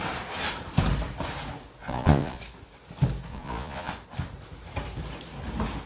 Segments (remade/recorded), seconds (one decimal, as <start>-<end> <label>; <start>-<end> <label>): 0.0-1.8 recorded; 1.8-2.4 remade; 2.4-3.3 recorded; 3.3-3.9 remade; 3.9-5.9 recorded